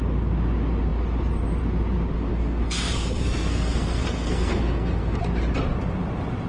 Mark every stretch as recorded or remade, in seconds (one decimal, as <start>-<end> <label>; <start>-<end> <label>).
0.0-2.3 recorded; 2.3-5.2 remade; 5.2-6.5 recorded